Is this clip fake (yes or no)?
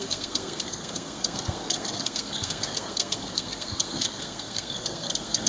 yes